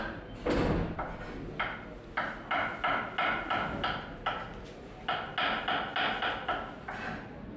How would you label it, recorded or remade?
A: recorded